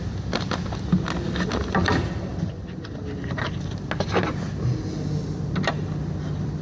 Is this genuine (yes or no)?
yes